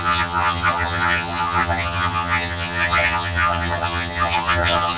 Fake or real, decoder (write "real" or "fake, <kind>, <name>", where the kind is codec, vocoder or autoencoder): fake, vocoder, HiFi-GAN